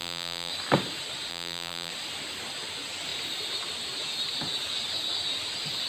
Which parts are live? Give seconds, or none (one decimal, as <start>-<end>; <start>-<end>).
0.5-1.3; 1.9-5.9